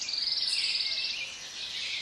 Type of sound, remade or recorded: recorded